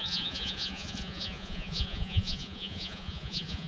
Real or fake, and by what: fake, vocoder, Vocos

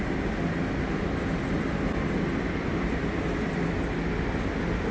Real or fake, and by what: real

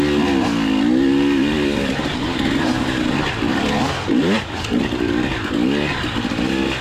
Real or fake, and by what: real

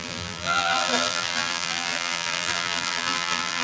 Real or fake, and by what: fake, vocoder, BigVGAN v2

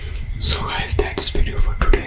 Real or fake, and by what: real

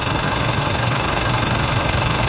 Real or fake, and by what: fake, autoencoder, DAC-VAE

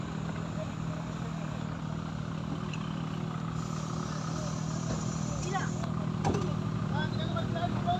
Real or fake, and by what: real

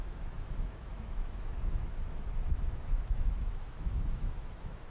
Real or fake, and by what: fake, autoencoder, DAC-VAE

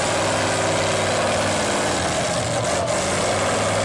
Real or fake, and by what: real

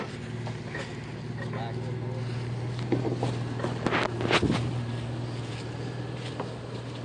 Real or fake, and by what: real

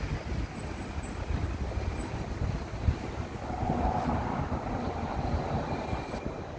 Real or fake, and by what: real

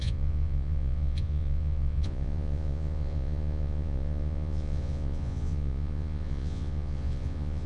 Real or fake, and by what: fake, vocoder, Vocos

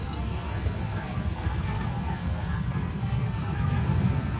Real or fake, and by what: fake, codec, SNAC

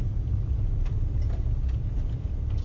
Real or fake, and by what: real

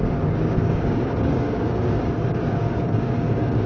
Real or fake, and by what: fake, codec, DAC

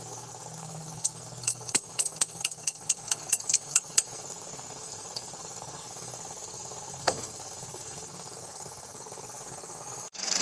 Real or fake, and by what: fake, codec, SNAC